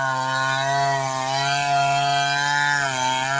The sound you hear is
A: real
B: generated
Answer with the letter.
A